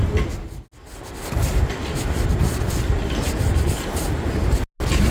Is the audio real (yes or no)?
yes